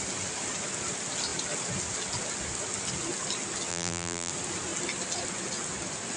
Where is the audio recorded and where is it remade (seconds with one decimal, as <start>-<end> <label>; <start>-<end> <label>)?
0.0-3.7 recorded; 3.7-4.3 remade; 4.3-6.2 recorded